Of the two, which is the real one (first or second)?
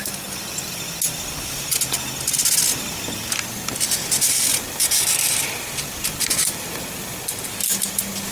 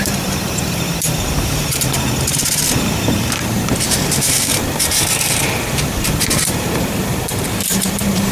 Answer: first